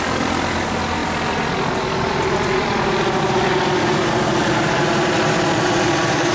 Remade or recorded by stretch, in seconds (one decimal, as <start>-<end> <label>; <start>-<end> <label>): 0.0-6.3 recorded